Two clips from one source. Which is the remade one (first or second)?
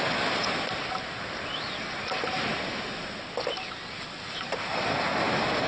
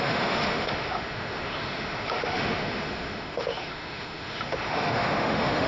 second